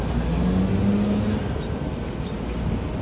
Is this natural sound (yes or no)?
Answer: yes